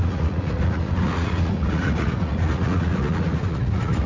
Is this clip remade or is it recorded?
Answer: remade